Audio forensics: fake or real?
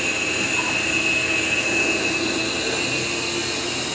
real